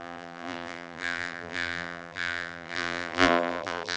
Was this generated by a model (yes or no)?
yes